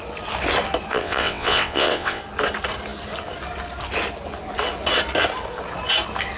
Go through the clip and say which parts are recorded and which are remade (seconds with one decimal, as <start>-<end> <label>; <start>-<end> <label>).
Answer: 0.0-0.9 recorded; 0.9-2.2 remade; 2.2-6.4 recorded